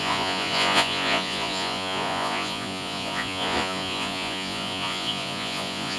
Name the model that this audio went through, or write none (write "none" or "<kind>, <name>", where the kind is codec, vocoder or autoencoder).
vocoder, Vocos